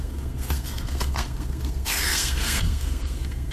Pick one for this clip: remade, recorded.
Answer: remade